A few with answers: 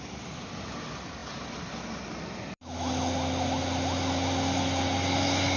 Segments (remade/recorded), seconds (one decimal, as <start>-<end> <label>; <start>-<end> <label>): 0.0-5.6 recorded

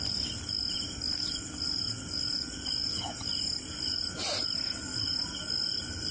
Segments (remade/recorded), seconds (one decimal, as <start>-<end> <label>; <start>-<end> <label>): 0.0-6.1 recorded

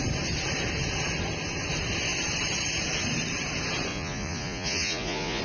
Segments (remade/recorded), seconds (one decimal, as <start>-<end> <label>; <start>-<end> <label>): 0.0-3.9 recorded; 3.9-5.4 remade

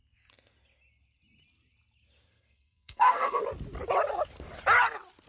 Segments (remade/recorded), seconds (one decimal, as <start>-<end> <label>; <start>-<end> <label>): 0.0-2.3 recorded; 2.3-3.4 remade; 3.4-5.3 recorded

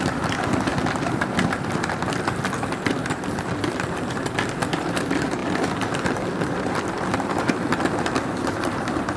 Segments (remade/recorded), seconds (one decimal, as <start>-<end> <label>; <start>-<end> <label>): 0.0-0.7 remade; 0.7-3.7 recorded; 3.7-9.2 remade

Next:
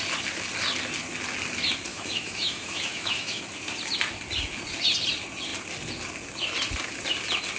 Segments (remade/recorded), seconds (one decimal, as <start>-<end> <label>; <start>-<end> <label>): 0.0-1.9 recorded; 1.9-3.4 remade; 3.4-7.6 recorded

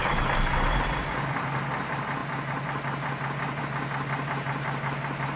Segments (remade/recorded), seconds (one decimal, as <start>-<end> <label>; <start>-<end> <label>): 0.0-5.4 recorded

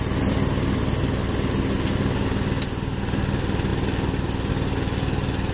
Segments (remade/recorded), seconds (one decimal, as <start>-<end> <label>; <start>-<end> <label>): 0.0-5.5 recorded